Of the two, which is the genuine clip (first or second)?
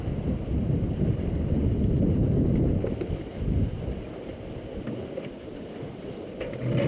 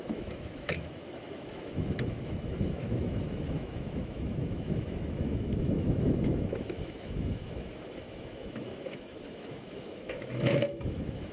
first